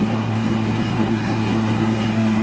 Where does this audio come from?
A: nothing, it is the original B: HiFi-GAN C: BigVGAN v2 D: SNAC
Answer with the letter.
D